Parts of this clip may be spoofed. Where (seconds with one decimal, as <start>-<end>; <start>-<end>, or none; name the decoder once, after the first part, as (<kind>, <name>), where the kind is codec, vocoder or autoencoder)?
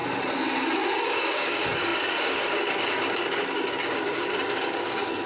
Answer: 1.0-5.3 (codec, DAC)